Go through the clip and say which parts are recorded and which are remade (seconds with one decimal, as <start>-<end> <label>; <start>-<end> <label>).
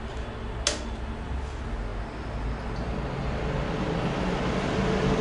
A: 0.0-5.2 recorded